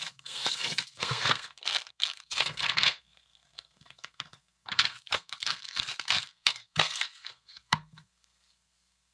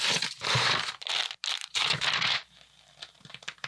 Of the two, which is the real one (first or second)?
second